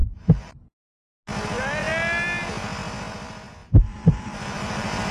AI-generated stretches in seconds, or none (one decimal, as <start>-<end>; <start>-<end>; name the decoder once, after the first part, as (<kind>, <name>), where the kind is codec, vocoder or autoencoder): 0.0-0.7 (vocoder, BigVGAN v2); 3.6-5.1